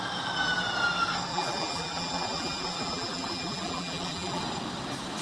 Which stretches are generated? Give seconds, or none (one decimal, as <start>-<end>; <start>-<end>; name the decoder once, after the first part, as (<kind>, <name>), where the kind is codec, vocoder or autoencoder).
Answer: 1.3-4.4 (vocoder, BigVGAN v2)